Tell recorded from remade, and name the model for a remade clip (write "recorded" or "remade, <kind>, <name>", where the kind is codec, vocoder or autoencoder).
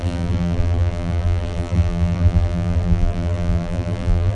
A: remade, vocoder, BigVGAN v2